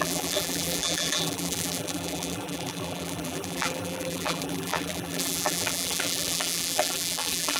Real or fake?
fake